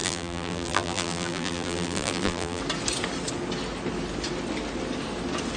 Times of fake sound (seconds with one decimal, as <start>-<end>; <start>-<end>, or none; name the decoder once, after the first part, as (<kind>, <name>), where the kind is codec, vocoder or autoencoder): 0.0-2.6 (vocoder, BigVGAN v2)